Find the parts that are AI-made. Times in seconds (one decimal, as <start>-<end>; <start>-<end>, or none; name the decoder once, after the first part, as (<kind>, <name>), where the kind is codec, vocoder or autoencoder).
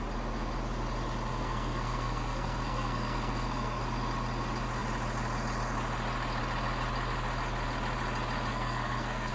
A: 1.3-3.8 (codec, SNAC); 8.5-9.3